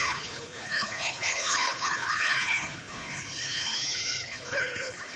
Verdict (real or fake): fake